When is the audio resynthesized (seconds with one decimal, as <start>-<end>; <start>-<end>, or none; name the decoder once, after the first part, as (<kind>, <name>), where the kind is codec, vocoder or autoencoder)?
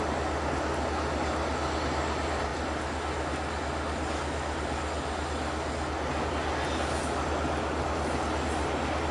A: none